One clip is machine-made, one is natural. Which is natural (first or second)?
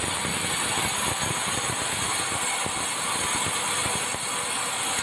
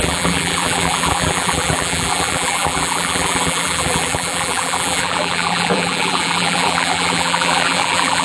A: first